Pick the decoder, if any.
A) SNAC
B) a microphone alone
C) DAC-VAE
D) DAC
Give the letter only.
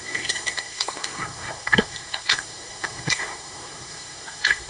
A